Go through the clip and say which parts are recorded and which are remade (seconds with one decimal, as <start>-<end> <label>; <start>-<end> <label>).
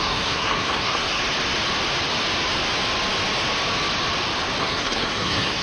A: 0.0-1.2 remade; 1.2-4.6 recorded; 4.6-5.6 remade